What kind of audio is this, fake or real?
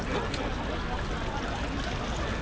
real